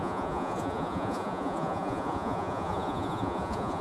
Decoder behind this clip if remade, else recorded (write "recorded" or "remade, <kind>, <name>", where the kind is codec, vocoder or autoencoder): remade, vocoder, Vocos